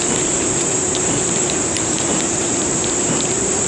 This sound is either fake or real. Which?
fake